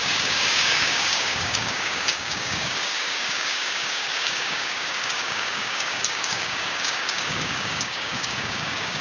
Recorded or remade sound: remade